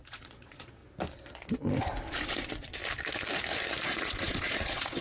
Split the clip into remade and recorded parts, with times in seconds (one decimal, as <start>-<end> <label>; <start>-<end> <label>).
0.0-0.8 remade; 0.8-2.1 recorded; 2.1-2.8 remade; 2.8-3.8 recorded; 3.8-5.0 remade